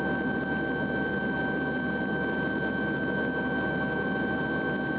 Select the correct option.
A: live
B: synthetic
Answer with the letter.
A